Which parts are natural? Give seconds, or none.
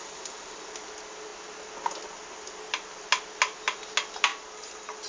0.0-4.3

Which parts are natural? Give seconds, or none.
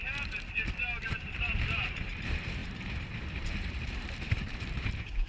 0.0-1.0